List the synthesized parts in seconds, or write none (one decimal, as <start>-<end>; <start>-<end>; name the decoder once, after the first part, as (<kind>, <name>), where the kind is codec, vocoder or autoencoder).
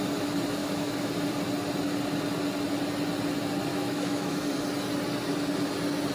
0.6-1.1 (autoencoder, DAC-VAE); 3.7-4.4